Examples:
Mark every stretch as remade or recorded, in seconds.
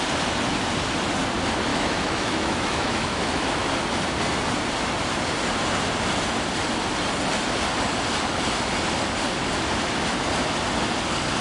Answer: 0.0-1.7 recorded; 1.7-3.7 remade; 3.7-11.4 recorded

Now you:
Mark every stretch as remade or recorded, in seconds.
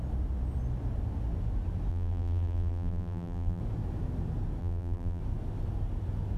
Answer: 0.0-1.9 recorded; 1.9-3.6 remade; 3.6-4.6 recorded; 4.6-5.2 remade; 5.2-6.4 recorded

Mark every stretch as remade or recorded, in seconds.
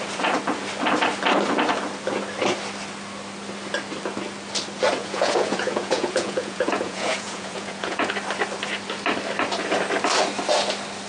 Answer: 0.0-5.0 recorded; 5.0-8.1 remade; 8.1-11.1 recorded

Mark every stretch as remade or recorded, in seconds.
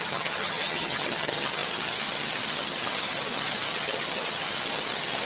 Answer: 0.0-5.2 remade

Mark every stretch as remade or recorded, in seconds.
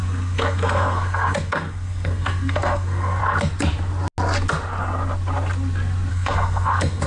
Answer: 0.0-3.2 remade; 3.2-6.1 recorded; 6.1-7.1 remade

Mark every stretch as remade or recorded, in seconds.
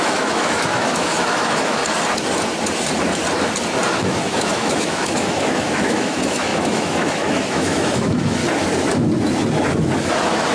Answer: 0.0-1.8 remade; 1.8-4.0 recorded; 4.0-8.4 remade; 8.4-10.0 recorded; 10.0-10.5 remade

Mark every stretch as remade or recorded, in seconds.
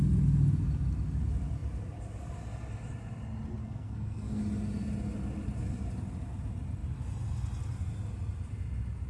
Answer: 0.0-3.6 recorded; 3.6-4.4 remade; 4.4-9.1 recorded